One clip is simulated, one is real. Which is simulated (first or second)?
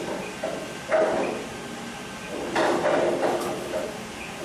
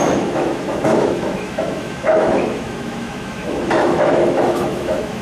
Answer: second